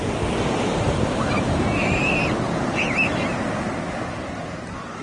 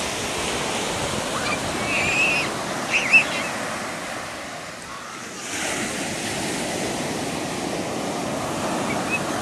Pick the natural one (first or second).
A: second